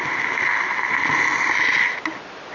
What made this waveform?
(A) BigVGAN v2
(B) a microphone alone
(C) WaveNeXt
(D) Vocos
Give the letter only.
B